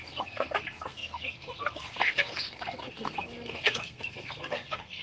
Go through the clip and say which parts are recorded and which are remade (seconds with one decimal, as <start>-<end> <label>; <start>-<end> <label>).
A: 0.0-5.0 remade